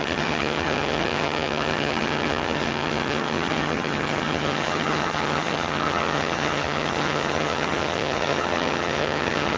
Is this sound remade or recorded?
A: remade